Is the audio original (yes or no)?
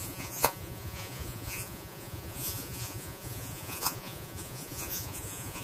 no